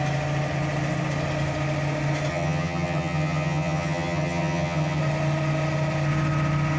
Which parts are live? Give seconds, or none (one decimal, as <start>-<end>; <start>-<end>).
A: 0.0-2.3; 5.0-6.8